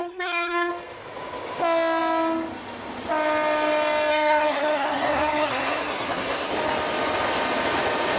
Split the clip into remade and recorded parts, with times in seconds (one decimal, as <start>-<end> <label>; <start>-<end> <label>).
0.0-0.7 remade; 0.7-4.1 recorded; 4.1-6.5 remade; 6.5-8.2 recorded